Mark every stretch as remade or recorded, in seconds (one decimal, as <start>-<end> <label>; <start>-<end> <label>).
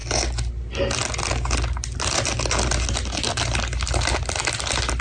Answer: 0.0-5.0 recorded